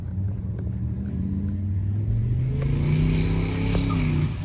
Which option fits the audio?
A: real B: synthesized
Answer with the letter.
A